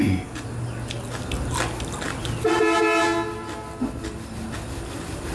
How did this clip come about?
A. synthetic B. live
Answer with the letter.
B